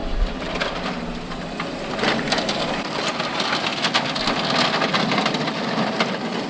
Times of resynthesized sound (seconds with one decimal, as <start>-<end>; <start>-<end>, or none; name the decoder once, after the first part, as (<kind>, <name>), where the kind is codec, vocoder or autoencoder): 0.0-3.7 (vocoder, BigVGAN v2)